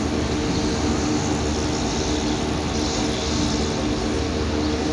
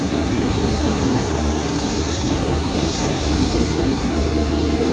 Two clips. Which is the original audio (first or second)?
first